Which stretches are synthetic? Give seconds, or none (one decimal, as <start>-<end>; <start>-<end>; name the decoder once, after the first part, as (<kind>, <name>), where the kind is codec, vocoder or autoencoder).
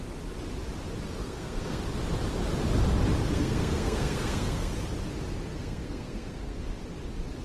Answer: 1.2-1.8 (codec, SNAC); 3.3-4.7; 5.5-6.6